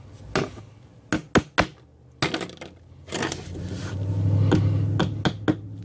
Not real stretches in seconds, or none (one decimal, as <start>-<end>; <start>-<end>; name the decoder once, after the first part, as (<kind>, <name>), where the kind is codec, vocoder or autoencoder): none